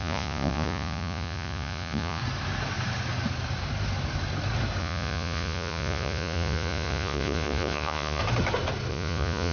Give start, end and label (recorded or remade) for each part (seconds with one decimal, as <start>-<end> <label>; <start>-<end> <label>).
0.0-2.2 remade; 2.2-4.8 recorded; 4.8-8.2 remade; 8.2-8.9 recorded; 8.9-9.5 remade